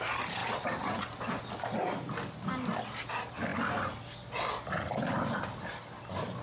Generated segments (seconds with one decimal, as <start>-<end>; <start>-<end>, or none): none